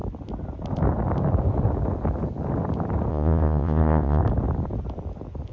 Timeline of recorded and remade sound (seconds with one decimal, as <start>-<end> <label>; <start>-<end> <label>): 0.0-3.1 recorded; 3.1-4.2 remade; 4.2-5.5 recorded